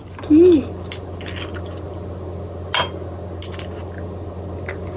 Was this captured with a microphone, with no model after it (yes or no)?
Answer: yes